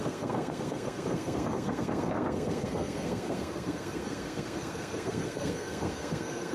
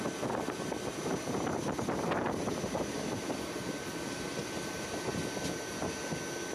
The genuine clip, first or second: second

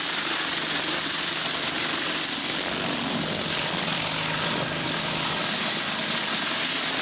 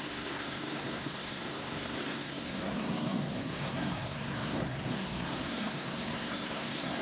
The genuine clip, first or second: first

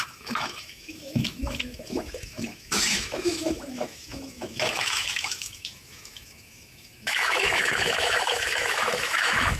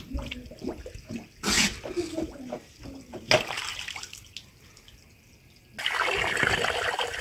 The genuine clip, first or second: second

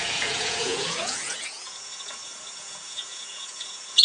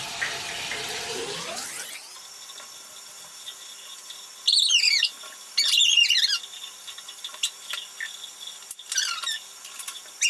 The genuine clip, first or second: second